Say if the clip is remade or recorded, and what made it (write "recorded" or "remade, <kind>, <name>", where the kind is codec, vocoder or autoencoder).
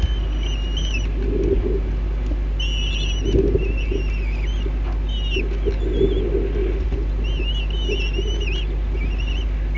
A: recorded